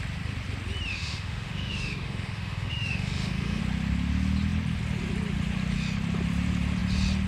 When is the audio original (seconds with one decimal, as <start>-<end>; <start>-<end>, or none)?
0.0-0.9; 3.6-7.3